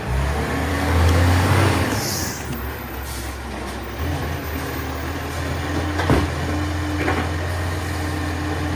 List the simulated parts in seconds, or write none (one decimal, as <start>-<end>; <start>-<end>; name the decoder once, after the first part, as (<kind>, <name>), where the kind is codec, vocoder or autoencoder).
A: 0.7-2.0 (codec, DAC)